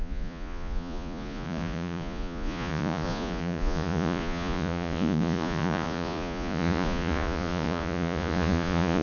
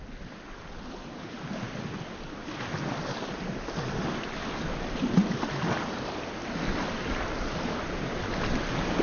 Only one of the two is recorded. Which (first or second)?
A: second